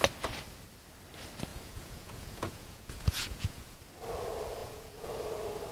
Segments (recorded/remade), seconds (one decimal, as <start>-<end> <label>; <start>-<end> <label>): 0.0-1.5 recorded; 1.5-3.8 remade; 3.8-4.6 recorded; 4.6-5.1 remade; 5.1-5.7 recorded